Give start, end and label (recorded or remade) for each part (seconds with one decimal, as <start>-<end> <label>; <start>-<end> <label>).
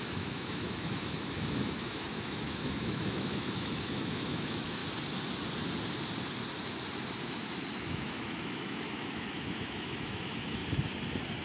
0.0-4.8 remade; 4.8-7.8 recorded; 7.8-10.6 remade; 10.6-11.4 recorded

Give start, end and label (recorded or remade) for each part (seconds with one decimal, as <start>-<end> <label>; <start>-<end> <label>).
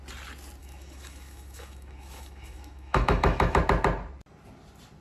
0.0-0.6 recorded; 0.6-3.6 remade; 3.6-5.0 recorded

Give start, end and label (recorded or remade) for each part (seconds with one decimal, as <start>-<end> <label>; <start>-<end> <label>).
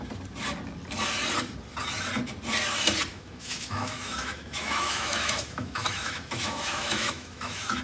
0.0-3.1 recorded; 3.1-7.8 remade